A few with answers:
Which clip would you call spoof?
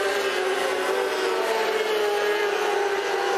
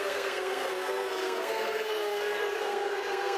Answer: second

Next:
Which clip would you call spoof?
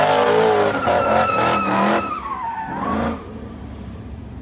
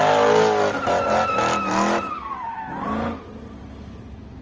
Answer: first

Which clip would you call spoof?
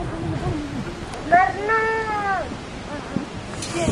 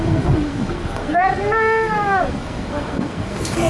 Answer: second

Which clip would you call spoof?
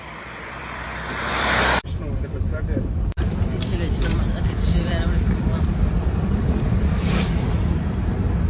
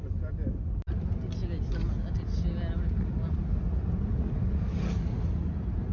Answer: first